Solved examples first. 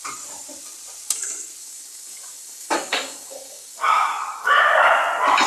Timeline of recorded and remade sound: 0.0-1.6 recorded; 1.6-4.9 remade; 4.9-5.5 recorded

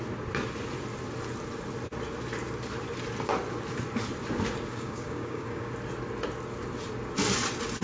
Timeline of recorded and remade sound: 0.0-4.7 recorded; 4.7-5.7 remade; 5.7-7.8 recorded